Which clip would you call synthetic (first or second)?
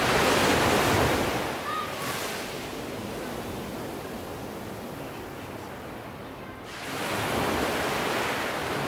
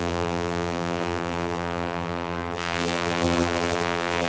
second